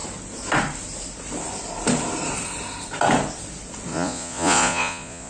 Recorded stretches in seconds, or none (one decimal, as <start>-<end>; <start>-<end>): 0.0-3.9